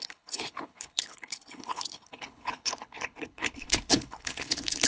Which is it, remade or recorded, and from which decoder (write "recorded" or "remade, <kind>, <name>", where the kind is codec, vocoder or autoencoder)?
remade, codec, HILCodec